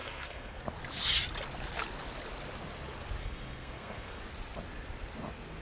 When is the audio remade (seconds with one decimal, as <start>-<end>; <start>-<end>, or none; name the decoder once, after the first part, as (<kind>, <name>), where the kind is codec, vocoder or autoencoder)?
0.0-0.6 (codec, SNAC); 3.2-4.2